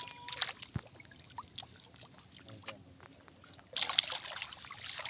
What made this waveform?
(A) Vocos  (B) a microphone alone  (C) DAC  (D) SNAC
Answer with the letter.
B